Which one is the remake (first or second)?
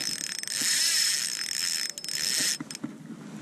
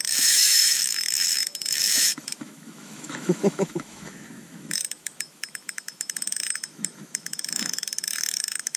second